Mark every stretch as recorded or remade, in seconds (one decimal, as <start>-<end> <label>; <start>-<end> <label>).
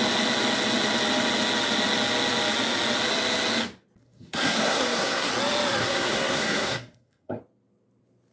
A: 0.0-4.0 recorded; 4.0-5.3 remade; 5.3-5.8 recorded; 5.8-7.4 remade; 7.4-8.3 recorded